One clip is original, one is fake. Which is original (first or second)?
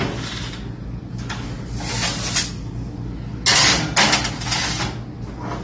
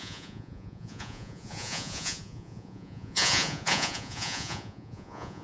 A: first